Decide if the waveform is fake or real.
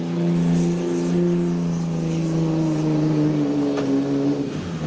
real